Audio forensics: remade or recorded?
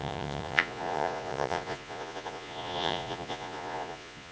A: remade